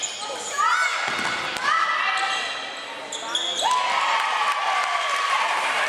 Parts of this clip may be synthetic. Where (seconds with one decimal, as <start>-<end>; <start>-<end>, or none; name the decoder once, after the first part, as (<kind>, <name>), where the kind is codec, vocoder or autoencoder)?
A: none